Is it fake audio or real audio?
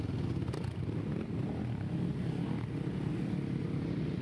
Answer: real